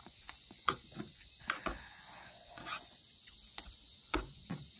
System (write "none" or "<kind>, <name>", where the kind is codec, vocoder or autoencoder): vocoder, Vocos